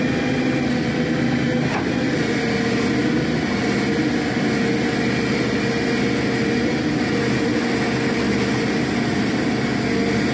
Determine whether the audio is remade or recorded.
recorded